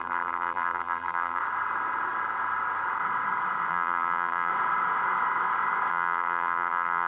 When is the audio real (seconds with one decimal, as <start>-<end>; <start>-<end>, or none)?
1.4-3.7; 4.5-5.9